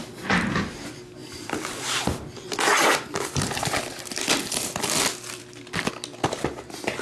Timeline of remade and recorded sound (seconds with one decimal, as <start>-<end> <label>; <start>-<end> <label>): 0.0-1.2 recorded; 1.2-5.4 remade; 5.4-7.0 recorded